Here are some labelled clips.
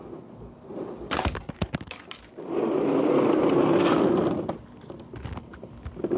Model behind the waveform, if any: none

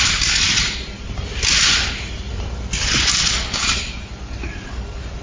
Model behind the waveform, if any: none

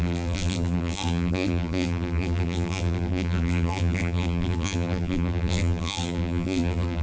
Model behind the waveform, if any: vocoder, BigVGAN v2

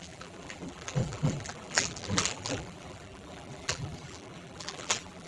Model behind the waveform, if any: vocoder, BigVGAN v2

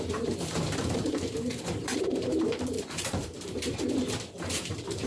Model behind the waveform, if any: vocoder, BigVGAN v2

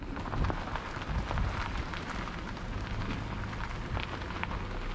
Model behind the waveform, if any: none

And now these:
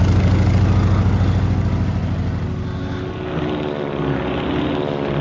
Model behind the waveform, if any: none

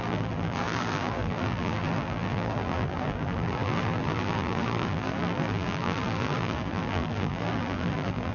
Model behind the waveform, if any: vocoder, BigVGAN v2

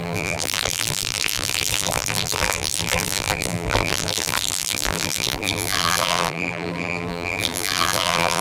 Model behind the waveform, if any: vocoder, BigVGAN v2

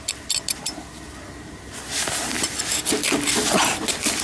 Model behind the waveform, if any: none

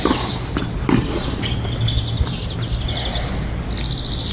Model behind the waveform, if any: none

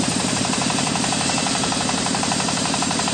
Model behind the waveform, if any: vocoder, BigVGAN v2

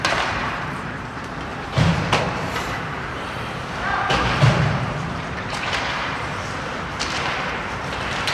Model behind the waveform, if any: vocoder, BigVGAN v2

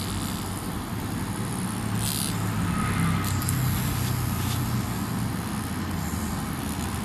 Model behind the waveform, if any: none